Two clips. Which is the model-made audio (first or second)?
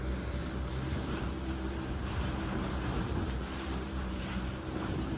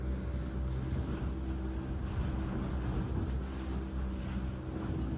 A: first